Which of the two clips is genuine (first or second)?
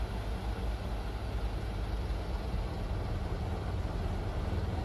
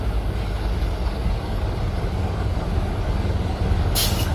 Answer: first